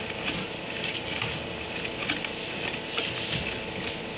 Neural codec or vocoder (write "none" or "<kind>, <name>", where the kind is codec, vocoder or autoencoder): none